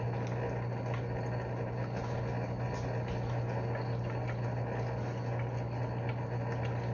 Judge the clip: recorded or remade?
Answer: recorded